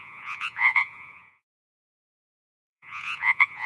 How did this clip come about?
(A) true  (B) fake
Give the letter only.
B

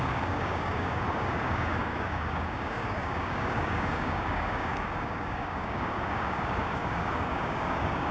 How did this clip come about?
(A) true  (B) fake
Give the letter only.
B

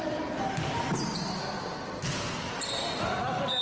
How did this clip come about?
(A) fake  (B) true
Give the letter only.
B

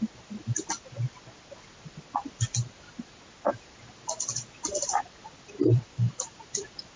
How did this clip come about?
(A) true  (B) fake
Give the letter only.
A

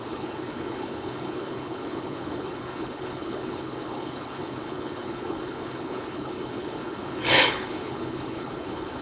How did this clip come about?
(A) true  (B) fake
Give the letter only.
B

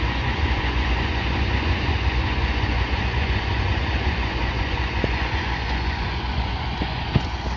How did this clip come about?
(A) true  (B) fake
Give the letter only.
B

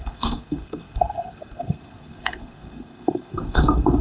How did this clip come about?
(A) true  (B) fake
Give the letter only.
B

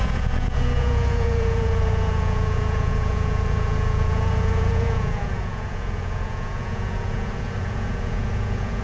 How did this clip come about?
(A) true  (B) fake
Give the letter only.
B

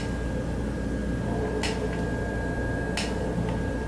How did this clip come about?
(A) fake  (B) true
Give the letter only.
B